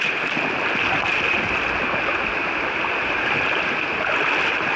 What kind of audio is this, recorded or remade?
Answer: recorded